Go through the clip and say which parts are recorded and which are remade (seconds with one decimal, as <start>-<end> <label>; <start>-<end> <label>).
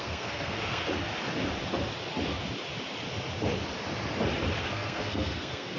0.0-1.1 remade; 1.1-4.6 recorded; 4.6-5.8 remade